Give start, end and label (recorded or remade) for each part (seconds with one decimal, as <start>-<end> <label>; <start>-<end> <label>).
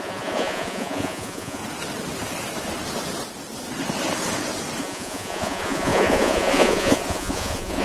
0.0-1.6 remade; 1.6-4.8 recorded; 4.8-7.8 remade